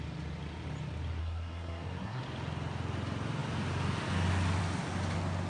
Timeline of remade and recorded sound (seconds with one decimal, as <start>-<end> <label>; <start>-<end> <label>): 0.0-1.2 recorded; 1.2-2.2 remade; 2.2-5.5 recorded